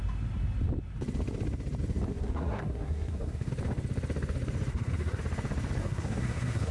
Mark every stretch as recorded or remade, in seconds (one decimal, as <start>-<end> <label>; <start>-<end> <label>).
0.0-2.1 recorded; 2.1-3.5 remade; 3.5-4.7 recorded; 4.7-5.2 remade; 5.2-5.8 recorded; 5.8-6.7 remade

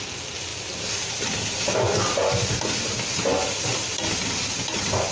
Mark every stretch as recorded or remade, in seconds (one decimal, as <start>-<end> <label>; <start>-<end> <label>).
0.0-5.1 recorded

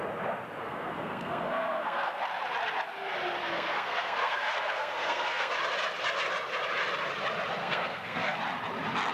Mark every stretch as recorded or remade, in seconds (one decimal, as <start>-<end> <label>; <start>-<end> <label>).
0.0-0.6 recorded; 0.6-2.2 remade; 2.2-3.4 recorded; 3.4-5.5 remade; 5.5-7.6 recorded; 7.6-8.4 remade; 8.4-9.1 recorded

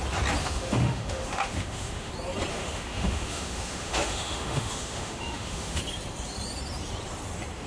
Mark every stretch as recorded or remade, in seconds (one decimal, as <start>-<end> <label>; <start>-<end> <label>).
0.0-0.4 recorded; 0.4-2.1 remade; 2.1-2.5 recorded; 2.5-5.8 remade; 5.8-7.7 recorded

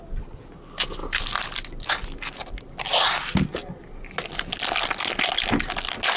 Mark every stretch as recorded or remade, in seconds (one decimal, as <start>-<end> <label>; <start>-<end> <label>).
0.0-6.2 recorded

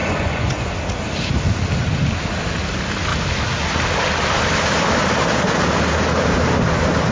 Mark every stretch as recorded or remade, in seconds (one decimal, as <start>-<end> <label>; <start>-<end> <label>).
0.0-0.7 remade; 0.7-7.1 recorded

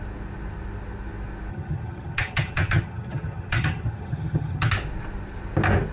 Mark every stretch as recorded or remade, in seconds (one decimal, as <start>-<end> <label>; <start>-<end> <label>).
0.0-1.5 recorded; 1.5-4.7 remade; 4.7-5.9 recorded

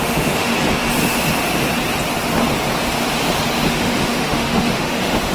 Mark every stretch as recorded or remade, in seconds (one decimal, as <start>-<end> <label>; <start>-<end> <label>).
0.0-0.5 remade; 0.5-3.7 recorded; 3.7-5.3 remade